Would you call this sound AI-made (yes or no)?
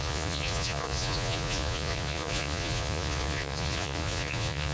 yes